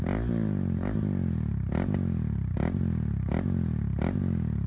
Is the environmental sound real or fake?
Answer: real